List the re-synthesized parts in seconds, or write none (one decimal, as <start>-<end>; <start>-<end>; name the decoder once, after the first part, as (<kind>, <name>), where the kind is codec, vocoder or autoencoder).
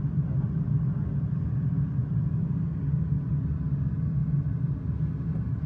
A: none